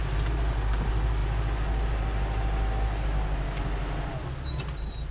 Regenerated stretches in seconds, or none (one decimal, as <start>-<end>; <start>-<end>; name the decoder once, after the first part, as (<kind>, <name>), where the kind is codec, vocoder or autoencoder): none